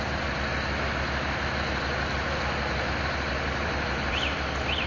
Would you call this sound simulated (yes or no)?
yes